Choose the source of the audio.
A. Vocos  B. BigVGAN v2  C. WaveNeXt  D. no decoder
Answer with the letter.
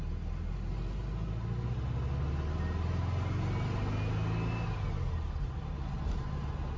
D